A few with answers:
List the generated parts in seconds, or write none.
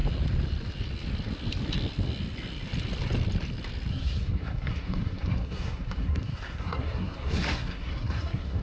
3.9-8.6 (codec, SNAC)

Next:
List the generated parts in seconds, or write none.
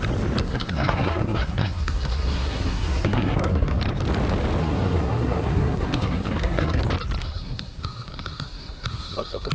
0.4-3.8 (codec, SNAC); 4.6-6.8; 7.2-9.5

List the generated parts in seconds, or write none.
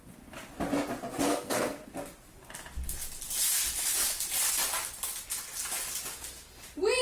1.3-1.9 (codec, SNAC)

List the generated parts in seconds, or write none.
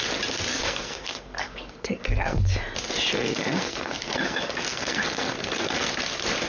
0.5-2.4 (codec, SNAC); 3.1-5.9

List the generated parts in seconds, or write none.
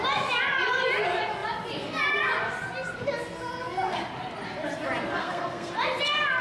5.2-5.7 (codec, SNAC)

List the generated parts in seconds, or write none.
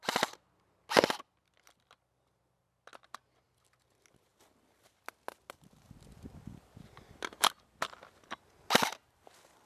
none